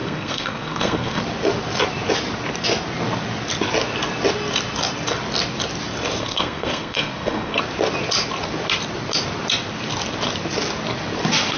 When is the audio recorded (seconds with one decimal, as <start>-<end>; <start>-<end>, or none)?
1.2-6.2; 7.6-11.6